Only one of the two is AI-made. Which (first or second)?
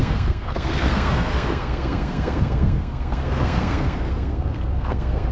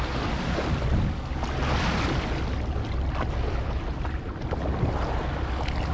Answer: first